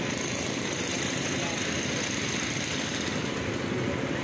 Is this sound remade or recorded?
recorded